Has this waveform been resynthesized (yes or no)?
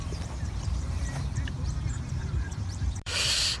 yes